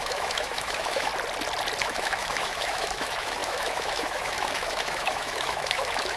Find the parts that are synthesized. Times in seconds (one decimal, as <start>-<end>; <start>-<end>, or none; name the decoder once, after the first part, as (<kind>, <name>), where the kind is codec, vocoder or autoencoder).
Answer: 0.0-1.1 (autoencoder, DAC-VAE); 1.8-6.2